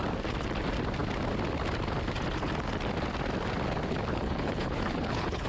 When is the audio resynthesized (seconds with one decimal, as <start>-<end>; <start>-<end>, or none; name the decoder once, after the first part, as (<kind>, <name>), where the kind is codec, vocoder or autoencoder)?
4.1-5.5 (codec, HILCodec)